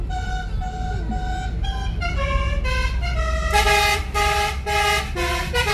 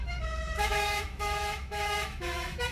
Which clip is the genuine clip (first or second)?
first